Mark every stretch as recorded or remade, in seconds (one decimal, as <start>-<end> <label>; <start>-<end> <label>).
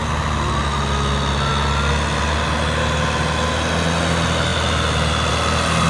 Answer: 0.0-5.9 recorded